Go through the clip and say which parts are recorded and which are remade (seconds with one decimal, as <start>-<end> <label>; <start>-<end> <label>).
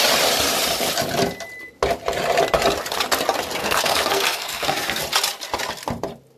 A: 0.0-3.6 recorded; 3.6-5.0 remade; 5.0-6.4 recorded